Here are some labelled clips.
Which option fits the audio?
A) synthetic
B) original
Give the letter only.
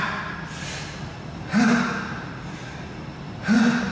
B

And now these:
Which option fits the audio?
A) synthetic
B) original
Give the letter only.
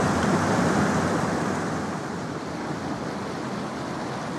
B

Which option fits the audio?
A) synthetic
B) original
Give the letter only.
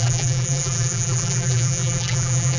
A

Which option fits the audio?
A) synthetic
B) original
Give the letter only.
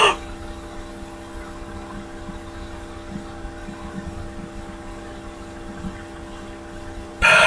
B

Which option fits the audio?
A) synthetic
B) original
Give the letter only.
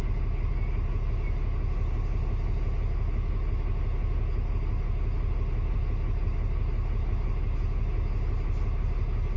B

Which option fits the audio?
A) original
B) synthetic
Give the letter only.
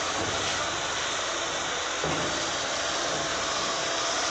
A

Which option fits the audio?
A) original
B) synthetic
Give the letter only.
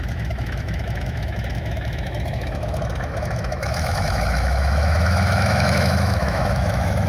B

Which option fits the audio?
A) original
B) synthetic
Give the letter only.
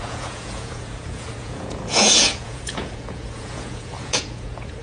B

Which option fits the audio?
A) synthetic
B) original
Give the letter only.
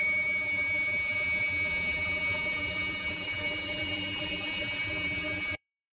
A